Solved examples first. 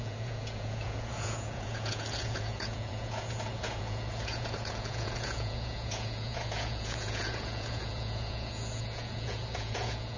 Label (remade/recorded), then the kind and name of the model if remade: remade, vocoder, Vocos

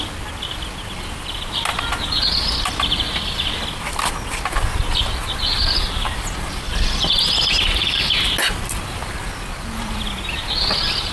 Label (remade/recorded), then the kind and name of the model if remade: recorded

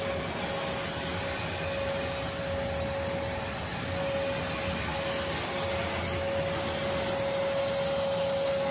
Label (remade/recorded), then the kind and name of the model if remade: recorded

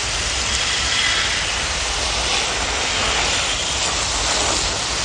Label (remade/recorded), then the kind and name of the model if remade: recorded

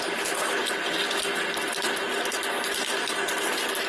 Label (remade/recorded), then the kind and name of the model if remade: recorded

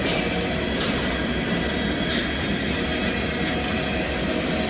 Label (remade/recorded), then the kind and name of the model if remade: recorded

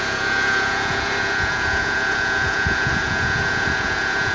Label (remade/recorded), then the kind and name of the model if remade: remade, vocoder, Vocos